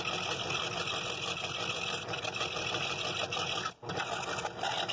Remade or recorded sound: recorded